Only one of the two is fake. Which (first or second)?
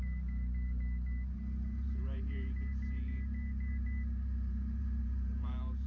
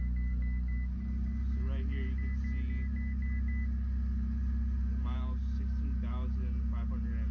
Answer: first